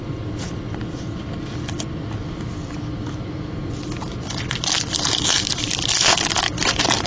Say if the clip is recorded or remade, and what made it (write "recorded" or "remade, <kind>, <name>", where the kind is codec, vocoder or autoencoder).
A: recorded